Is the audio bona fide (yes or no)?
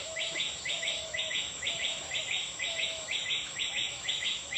no